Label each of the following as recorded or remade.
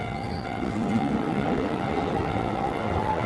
remade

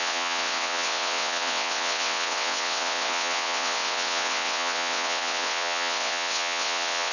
remade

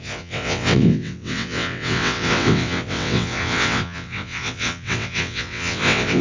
remade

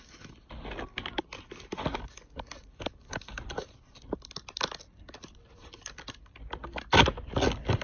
recorded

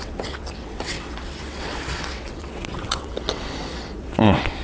remade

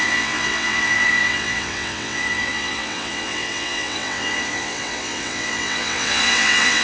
remade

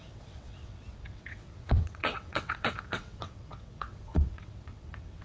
remade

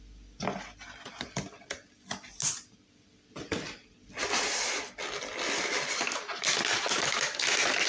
recorded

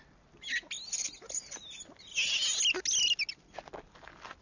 recorded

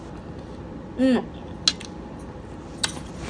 recorded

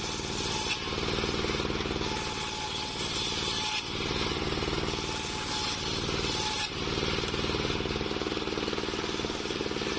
recorded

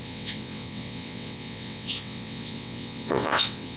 remade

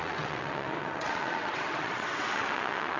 remade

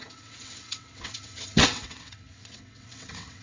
remade